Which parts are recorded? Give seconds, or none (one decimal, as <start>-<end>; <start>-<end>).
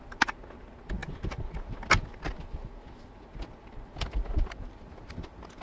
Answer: 0.0-5.6